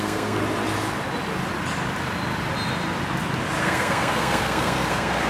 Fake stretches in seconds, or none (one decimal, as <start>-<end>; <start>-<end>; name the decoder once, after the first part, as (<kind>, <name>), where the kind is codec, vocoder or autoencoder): 0.0-0.4 (codec, SNAC); 3.6-5.3